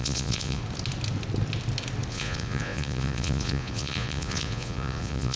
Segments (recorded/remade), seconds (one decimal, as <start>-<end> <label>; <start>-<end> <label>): 0.0-0.6 remade; 0.6-2.1 recorded; 2.1-5.4 remade